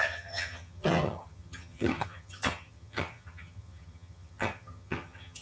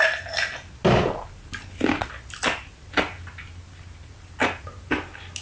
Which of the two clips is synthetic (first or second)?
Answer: first